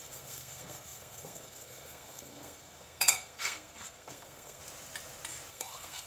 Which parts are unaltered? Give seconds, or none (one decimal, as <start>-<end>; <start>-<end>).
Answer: 4.6-5.5